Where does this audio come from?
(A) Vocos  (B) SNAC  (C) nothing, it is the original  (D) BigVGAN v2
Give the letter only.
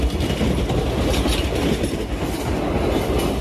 C